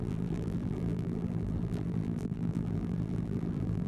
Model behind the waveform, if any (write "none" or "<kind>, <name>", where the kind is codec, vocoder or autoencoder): vocoder, BigVGAN v2